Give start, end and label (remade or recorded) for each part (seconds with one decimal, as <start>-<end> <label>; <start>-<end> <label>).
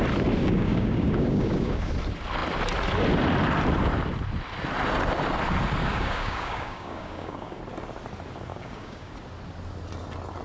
0.0-0.4 recorded; 0.4-1.9 remade; 1.9-5.8 recorded; 5.8-7.6 remade; 7.6-8.5 recorded; 8.5-9.1 remade; 9.1-10.4 recorded